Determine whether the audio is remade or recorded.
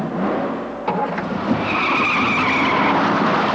recorded